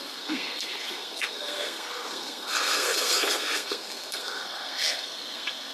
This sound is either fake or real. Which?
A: fake